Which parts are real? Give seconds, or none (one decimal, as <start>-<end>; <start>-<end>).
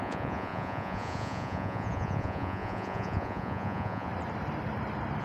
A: 4.1-5.2